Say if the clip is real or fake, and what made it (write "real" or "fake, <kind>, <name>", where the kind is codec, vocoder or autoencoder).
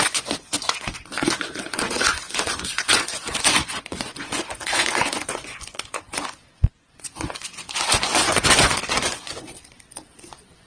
fake, vocoder, Vocos